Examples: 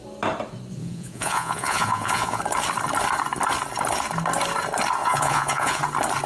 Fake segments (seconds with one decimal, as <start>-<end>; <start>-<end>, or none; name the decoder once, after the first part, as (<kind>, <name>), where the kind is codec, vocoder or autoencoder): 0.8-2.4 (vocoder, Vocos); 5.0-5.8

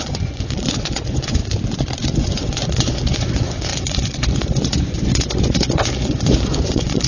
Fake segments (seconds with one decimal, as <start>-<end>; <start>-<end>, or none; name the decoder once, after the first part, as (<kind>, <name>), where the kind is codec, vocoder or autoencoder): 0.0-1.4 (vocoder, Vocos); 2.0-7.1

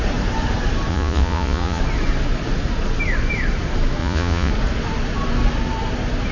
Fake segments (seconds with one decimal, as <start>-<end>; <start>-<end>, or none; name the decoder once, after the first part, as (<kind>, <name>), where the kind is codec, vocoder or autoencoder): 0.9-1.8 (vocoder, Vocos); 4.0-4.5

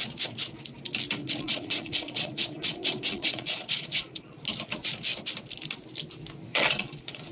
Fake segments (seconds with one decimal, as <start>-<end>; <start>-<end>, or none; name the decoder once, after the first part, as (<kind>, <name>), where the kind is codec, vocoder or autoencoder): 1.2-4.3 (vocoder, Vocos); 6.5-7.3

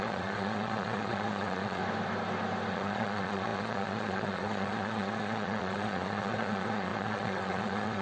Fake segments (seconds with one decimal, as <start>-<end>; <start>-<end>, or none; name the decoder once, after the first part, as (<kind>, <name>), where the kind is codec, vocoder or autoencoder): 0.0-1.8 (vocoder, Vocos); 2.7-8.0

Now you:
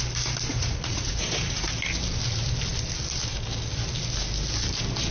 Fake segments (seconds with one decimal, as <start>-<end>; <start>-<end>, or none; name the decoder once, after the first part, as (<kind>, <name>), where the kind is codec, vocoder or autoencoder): 0.5-1.7 (vocoder, Vocos)

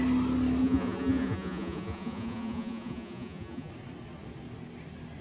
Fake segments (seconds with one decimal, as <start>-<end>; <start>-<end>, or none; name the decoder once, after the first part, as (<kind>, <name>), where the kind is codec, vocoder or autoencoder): 0.6-3.7 (vocoder, Vocos)